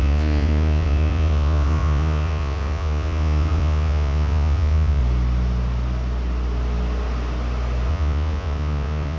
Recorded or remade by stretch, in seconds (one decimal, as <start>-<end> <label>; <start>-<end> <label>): 0.0-5.0 remade; 5.0-7.9 recorded; 7.9-9.2 remade